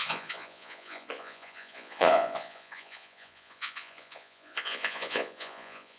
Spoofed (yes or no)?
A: yes